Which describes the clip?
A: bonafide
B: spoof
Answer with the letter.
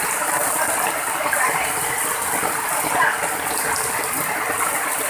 A